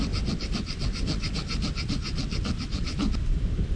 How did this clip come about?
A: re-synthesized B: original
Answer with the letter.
B